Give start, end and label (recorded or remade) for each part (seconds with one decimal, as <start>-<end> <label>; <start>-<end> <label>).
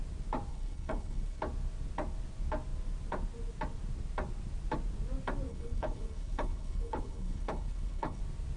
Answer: 0.0-0.5 recorded; 0.5-1.4 remade; 1.4-5.5 recorded; 5.5-8.2 remade; 8.2-8.6 recorded